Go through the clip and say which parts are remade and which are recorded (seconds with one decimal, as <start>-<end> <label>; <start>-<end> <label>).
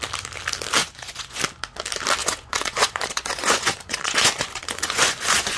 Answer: 0.0-0.8 recorded; 0.8-1.4 remade; 1.4-2.2 recorded; 2.2-5.6 remade